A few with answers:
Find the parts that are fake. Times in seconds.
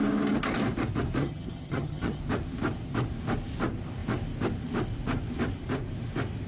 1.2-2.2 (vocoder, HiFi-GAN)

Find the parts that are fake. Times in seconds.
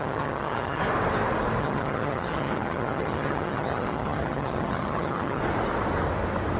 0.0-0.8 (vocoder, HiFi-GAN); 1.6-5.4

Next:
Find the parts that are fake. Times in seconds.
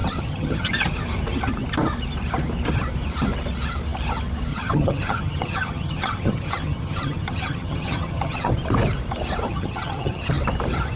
0.0-0.7 (vocoder, HiFi-GAN); 4.5-8.5; 9.5-10.3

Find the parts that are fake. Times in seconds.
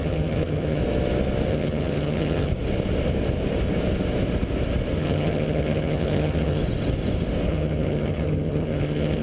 0.0-0.8 (vocoder, HiFi-GAN); 1.5-2.5; 5.0-6.6; 7.5-9.2